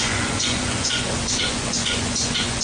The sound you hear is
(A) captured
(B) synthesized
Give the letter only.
B